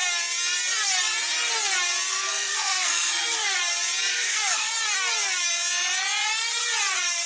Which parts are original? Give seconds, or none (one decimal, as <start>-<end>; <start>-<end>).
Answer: 0.0-2.1; 3.6-4.1; 4.7-7.3